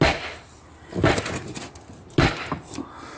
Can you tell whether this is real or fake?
real